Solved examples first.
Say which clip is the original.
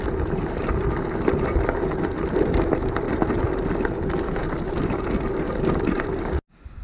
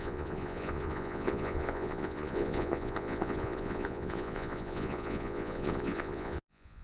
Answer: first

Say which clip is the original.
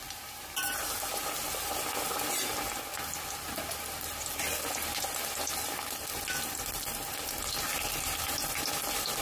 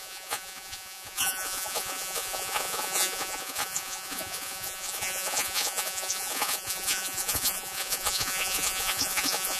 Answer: first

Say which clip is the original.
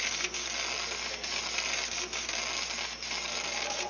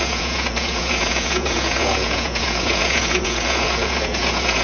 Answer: first